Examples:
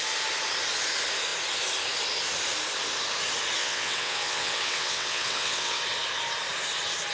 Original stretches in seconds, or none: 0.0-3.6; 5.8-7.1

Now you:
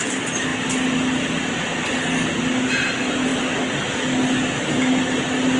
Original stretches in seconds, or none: 0.0-5.6

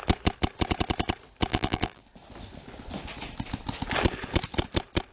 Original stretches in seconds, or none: 0.0-1.5; 2.0-5.1

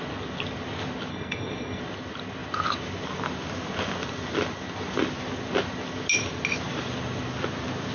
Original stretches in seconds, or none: 0.0-1.1; 1.8-7.9

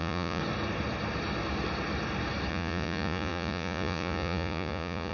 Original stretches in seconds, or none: 0.4-2.5

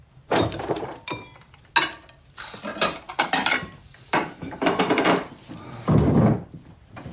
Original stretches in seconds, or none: 0.8-2.7; 5.3-7.1

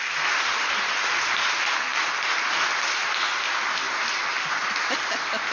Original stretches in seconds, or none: 0.0-5.5